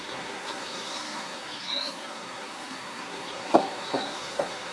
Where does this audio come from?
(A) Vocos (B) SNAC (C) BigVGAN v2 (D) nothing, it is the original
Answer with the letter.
B